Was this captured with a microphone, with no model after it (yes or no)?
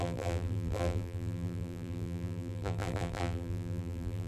no